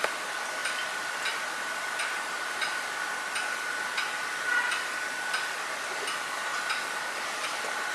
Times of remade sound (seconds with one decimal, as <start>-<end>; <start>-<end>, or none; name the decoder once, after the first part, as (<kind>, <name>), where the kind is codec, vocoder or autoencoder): none